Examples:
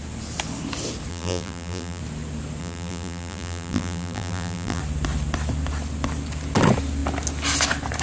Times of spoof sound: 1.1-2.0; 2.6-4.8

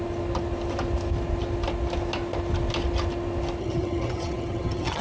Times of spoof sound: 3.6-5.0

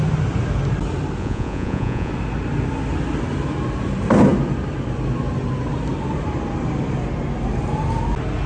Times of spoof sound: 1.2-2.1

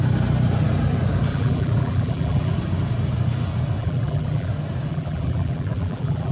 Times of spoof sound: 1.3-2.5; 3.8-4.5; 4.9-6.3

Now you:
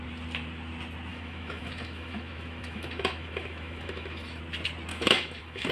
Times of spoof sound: 1.1-4.4; 4.9-5.7

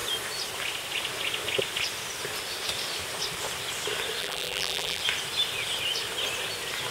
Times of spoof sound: 4.2-5.0

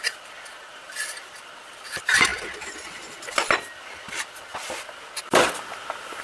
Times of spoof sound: 0.0-2.3; 3.2-4.5